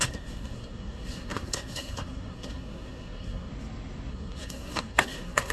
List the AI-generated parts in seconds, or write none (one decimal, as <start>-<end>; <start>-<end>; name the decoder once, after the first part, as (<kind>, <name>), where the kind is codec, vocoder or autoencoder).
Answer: 0.0-3.5 (codec, SNAC); 4.1-5.5